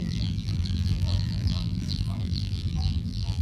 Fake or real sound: fake